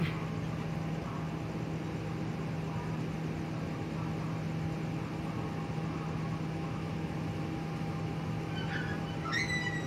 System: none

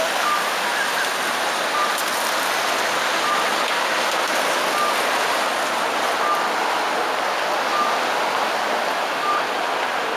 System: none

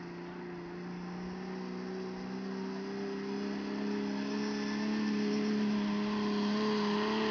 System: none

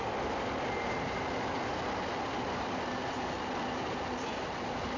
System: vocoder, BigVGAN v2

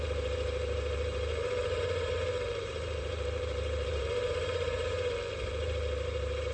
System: vocoder, BigVGAN v2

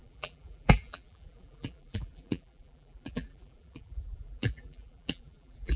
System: vocoder, BigVGAN v2